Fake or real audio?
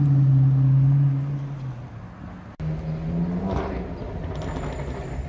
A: real